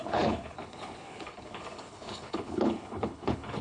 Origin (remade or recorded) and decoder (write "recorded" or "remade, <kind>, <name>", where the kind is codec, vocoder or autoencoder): remade, codec, HILCodec